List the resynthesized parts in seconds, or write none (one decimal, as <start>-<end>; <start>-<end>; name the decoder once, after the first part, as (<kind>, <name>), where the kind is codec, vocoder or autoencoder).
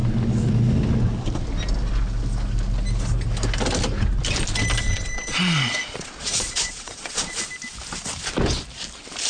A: 4.8-7.4 (vocoder, Vocos)